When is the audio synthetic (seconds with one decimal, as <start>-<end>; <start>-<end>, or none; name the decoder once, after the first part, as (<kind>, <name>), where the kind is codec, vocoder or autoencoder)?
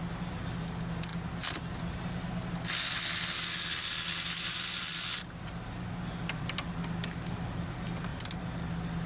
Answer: none